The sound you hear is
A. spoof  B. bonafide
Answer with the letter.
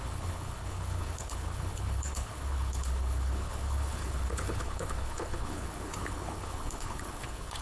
A